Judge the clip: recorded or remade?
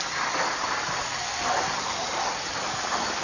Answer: recorded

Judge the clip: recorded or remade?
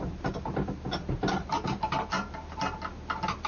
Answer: recorded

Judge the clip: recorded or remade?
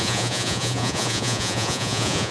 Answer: remade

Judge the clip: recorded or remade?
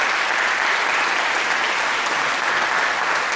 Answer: recorded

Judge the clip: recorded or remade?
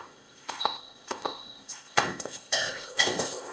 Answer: remade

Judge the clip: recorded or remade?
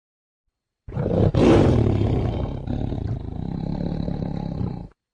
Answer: remade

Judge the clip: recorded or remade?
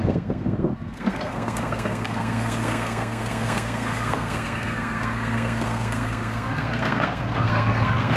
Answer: remade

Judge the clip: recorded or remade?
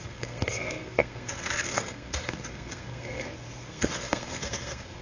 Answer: remade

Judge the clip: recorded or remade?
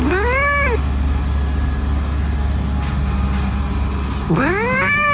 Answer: recorded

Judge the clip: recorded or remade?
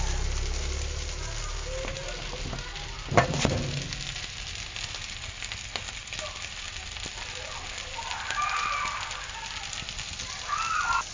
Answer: recorded